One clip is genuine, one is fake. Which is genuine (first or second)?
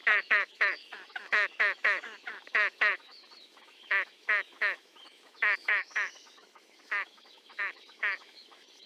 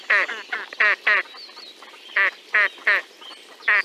second